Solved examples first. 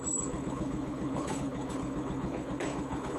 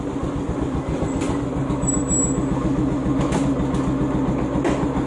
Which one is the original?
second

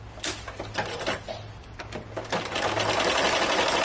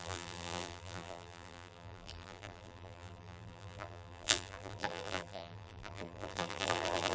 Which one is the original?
first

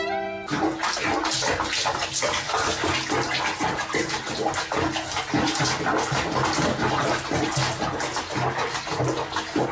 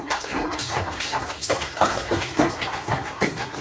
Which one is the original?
first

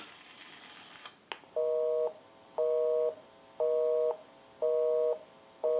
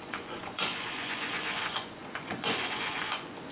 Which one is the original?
first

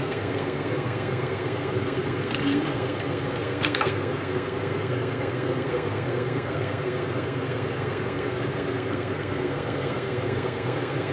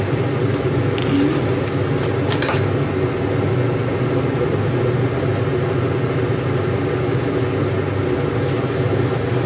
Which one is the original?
second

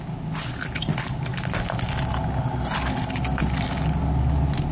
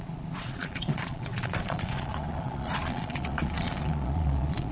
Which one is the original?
first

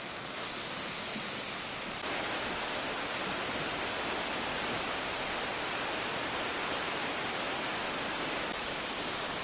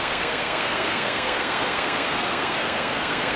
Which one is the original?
first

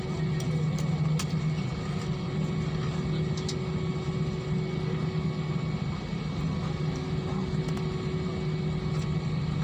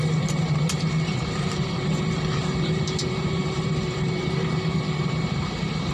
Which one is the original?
first